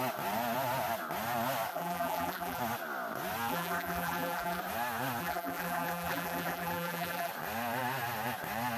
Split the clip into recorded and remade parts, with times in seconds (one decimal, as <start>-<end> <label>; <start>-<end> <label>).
0.0-1.7 recorded; 1.7-2.6 remade; 2.6-3.5 recorded; 3.5-4.6 remade; 4.6-5.2 recorded; 5.2-7.3 remade; 7.3-8.8 recorded